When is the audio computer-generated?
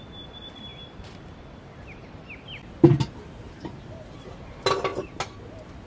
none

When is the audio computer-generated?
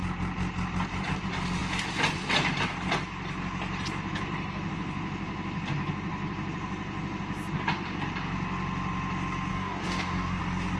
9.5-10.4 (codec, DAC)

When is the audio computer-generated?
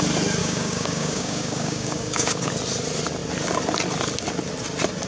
0.4-2.5 (codec, DAC)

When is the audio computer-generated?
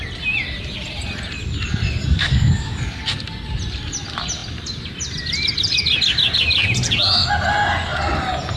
2.0-3.0 (codec, DAC)